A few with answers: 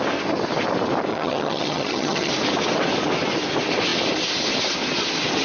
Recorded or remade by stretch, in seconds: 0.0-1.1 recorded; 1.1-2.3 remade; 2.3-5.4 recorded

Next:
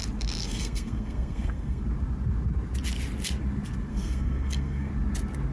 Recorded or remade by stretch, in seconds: 0.0-0.4 recorded; 0.4-1.8 remade; 1.8-3.9 recorded; 3.9-4.9 remade; 4.9-5.5 recorded

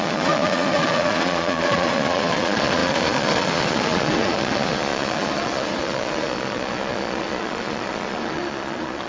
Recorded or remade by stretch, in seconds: 0.0-9.1 remade

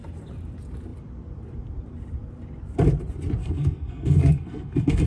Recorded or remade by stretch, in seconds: 0.0-3.4 recorded; 3.4-5.1 remade

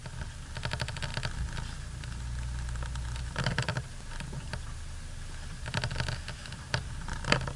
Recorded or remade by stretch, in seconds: 0.0-7.6 recorded

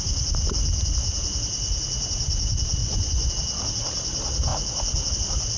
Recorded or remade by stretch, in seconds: 0.0-2.8 recorded; 2.8-3.3 remade; 3.3-5.6 recorded

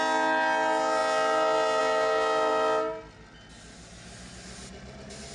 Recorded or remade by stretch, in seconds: 0.0-5.3 recorded